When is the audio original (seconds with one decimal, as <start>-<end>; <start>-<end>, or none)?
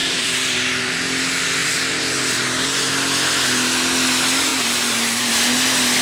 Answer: 0.9-1.6; 2.9-4.5; 5.3-6.0